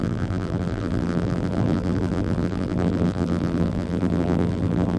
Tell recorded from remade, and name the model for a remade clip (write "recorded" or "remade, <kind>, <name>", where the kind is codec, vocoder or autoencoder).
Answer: remade, vocoder, BigVGAN v2